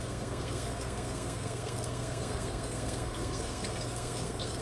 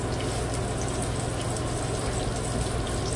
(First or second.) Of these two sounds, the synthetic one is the first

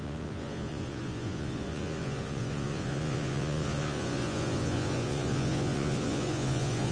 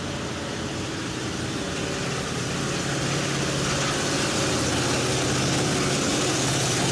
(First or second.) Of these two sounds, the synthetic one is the first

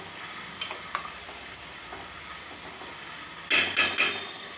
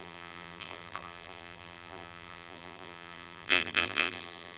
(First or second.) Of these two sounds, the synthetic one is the second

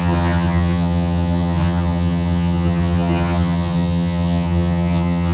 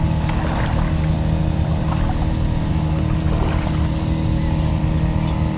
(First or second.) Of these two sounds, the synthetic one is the first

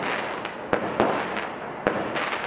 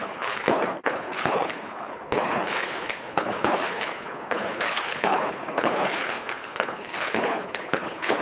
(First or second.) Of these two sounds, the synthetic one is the second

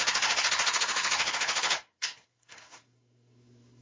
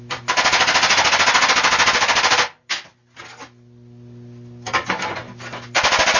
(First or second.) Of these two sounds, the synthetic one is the first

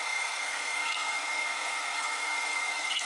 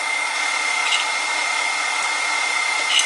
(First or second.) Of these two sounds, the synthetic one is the first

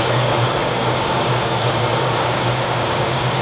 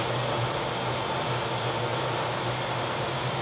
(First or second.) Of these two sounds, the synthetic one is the first